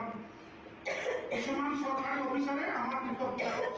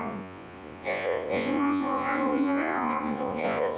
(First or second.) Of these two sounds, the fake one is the second